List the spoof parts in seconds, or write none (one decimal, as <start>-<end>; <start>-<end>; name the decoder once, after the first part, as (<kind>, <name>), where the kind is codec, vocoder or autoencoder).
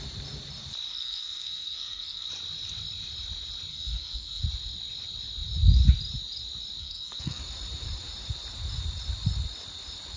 0.9-2.3 (codec, SNAC); 3.7-4.4; 6.8-7.4